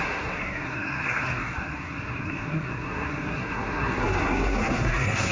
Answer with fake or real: fake